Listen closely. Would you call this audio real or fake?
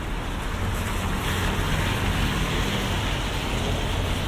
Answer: real